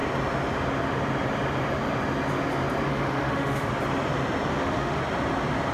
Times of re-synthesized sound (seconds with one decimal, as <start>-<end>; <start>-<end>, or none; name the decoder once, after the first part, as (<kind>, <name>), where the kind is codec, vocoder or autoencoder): 2.9-3.7 (autoencoder, DAC-VAE); 4.5-5.0